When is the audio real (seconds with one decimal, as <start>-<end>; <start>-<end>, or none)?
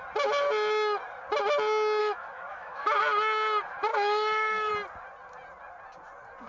0.0-2.0; 3.0-3.9; 4.7-6.5